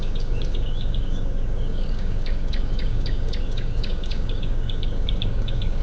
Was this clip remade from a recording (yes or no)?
yes